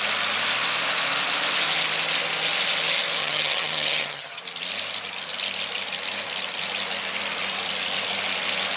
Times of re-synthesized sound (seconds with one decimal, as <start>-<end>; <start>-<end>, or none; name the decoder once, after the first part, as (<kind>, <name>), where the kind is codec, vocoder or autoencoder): 3.2-4.4 (vocoder, HiFi-GAN)